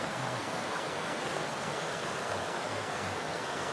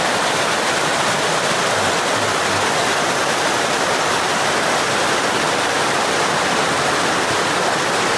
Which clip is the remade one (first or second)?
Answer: first